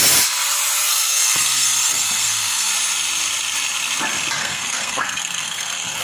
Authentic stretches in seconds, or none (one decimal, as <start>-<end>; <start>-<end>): 0.0-0.9; 2.7-4.4